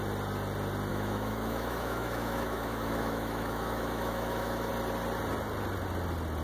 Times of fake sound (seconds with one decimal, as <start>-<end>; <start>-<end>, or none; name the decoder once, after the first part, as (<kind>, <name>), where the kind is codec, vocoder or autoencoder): 0.9-4.7 (autoencoder, DAC-VAE)